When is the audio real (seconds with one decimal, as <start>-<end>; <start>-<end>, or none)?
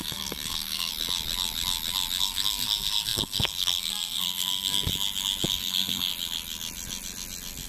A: 0.9-2.2; 4.9-5.5; 6.1-7.7